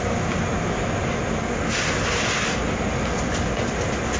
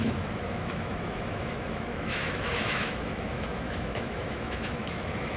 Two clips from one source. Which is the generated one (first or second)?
second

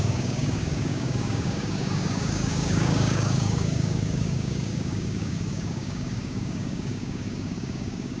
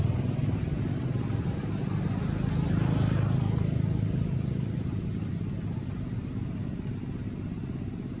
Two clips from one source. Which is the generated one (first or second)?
first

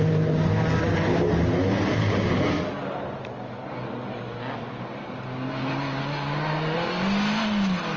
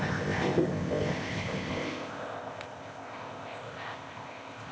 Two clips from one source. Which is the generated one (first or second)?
second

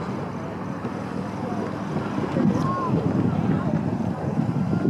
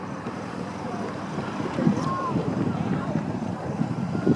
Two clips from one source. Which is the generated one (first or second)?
second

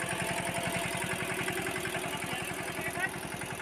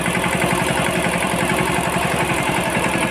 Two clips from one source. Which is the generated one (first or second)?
second